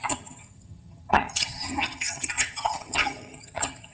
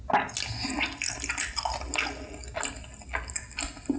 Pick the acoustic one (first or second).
second